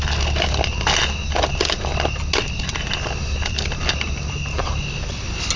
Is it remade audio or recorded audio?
recorded